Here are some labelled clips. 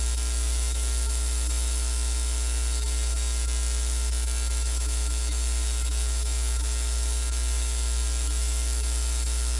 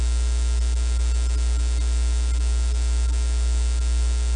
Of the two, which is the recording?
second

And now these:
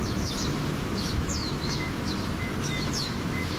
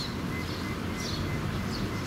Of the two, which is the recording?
second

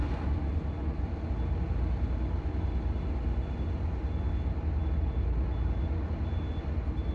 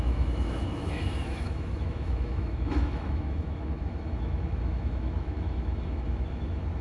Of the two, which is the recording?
first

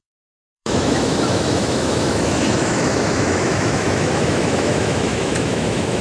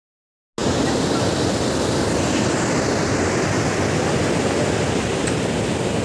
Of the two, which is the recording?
second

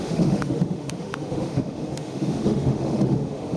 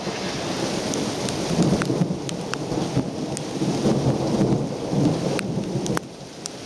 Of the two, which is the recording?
second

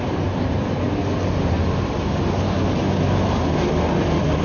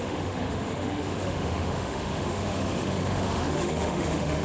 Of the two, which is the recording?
first